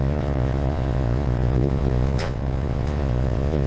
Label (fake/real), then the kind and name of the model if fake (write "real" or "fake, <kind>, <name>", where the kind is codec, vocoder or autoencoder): fake, vocoder, Vocos